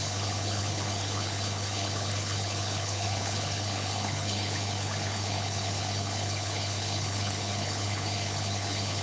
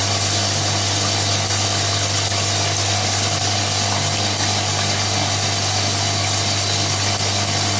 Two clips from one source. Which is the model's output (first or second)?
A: first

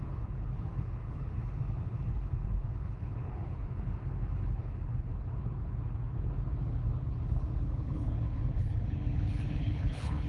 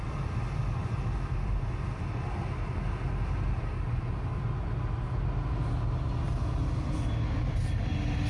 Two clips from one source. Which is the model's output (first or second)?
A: first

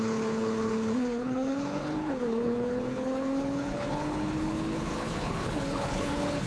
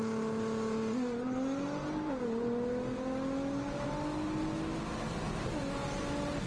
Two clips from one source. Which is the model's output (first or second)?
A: first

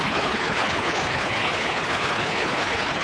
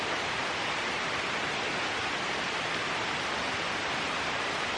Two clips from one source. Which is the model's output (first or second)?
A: first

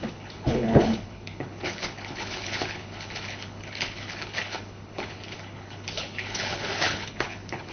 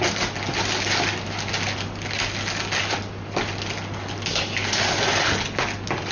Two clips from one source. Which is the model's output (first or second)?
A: first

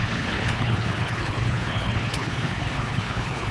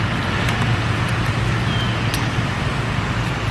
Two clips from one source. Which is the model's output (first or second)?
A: first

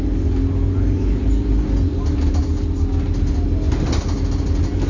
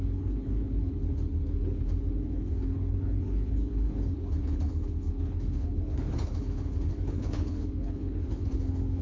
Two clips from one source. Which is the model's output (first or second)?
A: second